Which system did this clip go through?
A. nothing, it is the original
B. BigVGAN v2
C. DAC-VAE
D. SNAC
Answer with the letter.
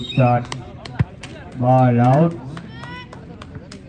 A